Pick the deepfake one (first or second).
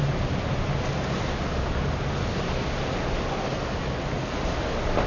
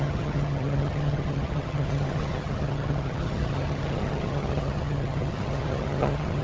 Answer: second